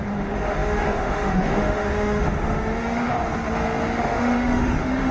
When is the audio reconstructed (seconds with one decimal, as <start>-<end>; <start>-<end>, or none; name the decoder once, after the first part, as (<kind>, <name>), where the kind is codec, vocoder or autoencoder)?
0.0-3.1 (autoencoder, DAC-VAE); 4.0-5.1